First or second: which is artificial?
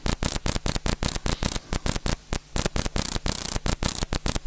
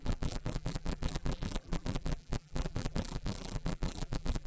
second